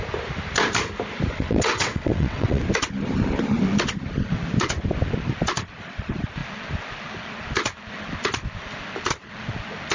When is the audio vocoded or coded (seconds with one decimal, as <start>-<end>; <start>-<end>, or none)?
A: 1.3-2.6